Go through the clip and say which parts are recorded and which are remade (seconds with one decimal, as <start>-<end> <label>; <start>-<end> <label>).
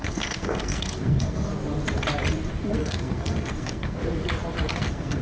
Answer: 0.0-1.5 remade; 1.5-2.7 recorded; 2.7-4.0 remade; 4.0-4.7 recorded; 4.7-5.2 remade